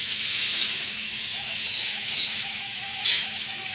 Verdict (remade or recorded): remade